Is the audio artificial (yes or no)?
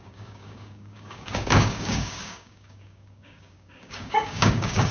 yes